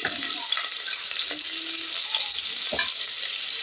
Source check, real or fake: real